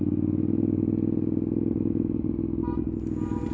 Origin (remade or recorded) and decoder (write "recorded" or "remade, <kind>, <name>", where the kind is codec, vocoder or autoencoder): remade, vocoder, BigVGAN v2